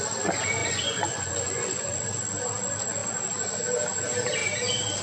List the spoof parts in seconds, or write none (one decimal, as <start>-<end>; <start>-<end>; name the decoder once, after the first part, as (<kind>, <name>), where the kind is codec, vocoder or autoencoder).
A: 0.6-2.0 (vocoder, Vocos)